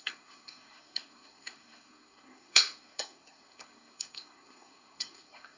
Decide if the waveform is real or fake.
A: fake